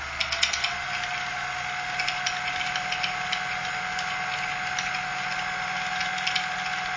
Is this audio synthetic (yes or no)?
no